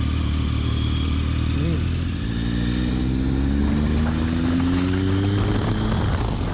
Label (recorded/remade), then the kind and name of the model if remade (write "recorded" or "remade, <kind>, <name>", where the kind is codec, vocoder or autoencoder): recorded